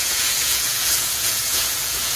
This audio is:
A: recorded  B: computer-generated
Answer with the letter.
B